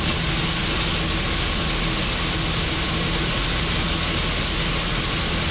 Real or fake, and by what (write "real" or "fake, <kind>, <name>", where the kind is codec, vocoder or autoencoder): real